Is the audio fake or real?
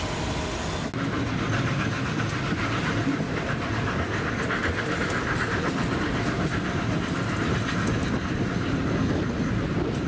real